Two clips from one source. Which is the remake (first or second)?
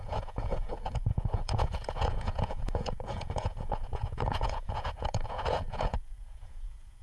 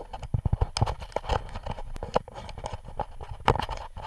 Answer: first